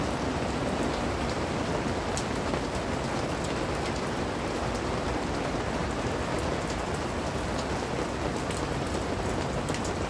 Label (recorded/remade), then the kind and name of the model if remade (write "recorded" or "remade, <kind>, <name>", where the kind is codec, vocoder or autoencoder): recorded